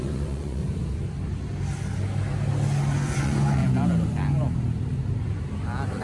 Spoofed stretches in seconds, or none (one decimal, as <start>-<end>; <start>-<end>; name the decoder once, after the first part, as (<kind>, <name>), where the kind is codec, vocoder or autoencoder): 0.0-0.6 (vocoder, Vocos); 3.2-3.6